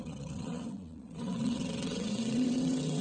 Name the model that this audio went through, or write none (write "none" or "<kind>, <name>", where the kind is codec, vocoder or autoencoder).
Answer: vocoder, WaveNeXt